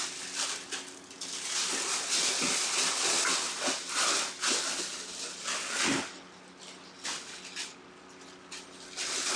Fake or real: real